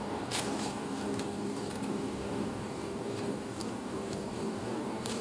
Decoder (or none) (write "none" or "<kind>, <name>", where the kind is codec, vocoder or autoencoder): codec, DAC